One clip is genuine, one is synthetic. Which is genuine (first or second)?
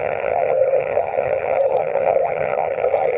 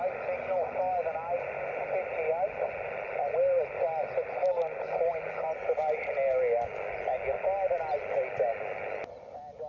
second